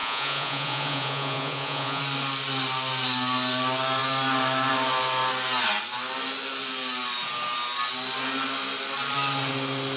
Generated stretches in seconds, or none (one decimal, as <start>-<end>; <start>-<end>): 0.0-2.0